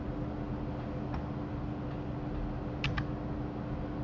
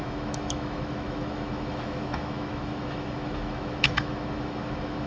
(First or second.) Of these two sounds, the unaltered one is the first